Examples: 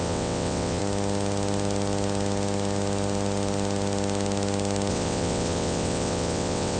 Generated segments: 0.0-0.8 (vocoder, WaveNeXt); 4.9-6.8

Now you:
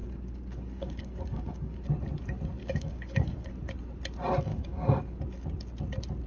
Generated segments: 0.0-1.8 (codec, DAC); 2.6-3.5; 4.5-5.2

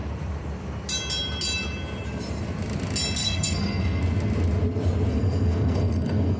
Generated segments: 3.2-4.0 (codec, SNAC); 5.1-6.4

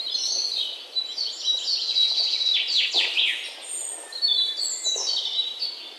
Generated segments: none